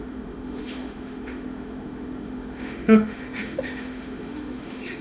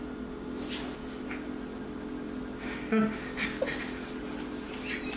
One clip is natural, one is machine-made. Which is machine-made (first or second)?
first